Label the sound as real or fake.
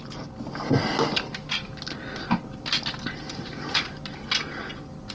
real